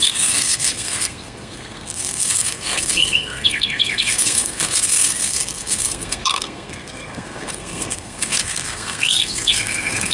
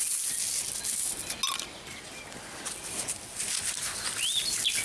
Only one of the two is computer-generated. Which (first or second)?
first